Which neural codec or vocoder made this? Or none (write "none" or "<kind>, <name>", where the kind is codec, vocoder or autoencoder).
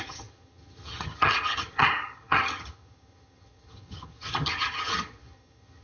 vocoder, HiFi-GAN